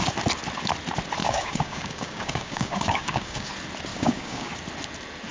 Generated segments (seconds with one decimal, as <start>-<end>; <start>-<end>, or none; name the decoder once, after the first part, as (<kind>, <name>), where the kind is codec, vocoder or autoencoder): 1.2-3.5 (codec, DAC); 3.9-4.5